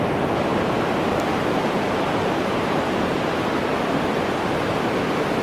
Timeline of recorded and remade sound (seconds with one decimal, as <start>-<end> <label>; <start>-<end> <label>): 0.0-0.5 recorded; 0.5-3.7 remade; 3.7-5.4 recorded

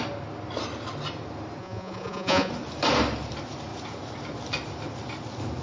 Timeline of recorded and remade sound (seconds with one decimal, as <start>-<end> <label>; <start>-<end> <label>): 0.0-1.6 recorded; 1.6-2.5 remade; 2.5-5.6 recorded

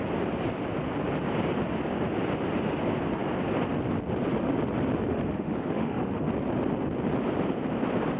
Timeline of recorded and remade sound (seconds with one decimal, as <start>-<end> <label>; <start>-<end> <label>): 0.0-5.1 recorded; 5.1-6.2 remade; 6.2-8.2 recorded